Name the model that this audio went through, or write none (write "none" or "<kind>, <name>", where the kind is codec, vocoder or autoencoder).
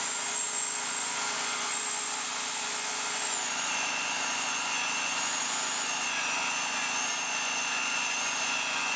vocoder, Vocos